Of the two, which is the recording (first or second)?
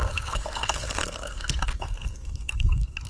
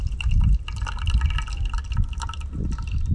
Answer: second